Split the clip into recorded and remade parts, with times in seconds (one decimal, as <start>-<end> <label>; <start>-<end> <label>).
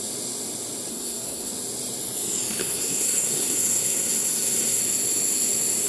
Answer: 0.0-0.9 recorded; 0.9-1.5 remade; 1.5-2.6 recorded; 2.6-4.8 remade; 4.8-5.9 recorded